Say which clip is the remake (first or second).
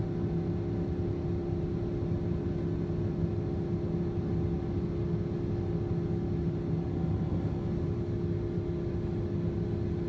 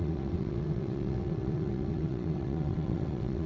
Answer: second